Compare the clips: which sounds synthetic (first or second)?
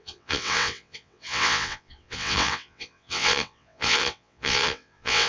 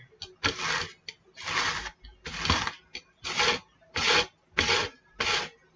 first